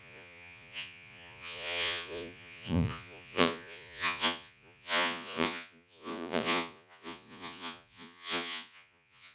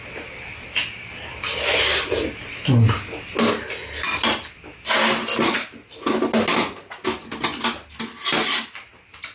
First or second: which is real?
second